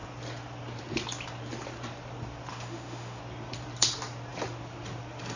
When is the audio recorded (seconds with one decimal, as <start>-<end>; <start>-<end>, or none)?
0.0-2.5; 3.2-5.4